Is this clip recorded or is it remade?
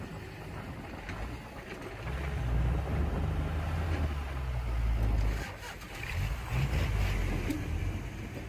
recorded